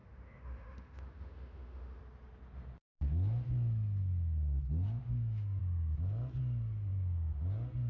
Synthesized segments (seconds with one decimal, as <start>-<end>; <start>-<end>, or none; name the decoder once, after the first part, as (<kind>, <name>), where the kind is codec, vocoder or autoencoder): 0.0-2.0 (autoencoder, DAC-VAE); 5.0-5.6